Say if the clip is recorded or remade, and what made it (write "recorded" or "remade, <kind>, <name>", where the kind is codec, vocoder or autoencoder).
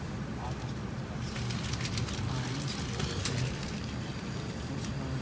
recorded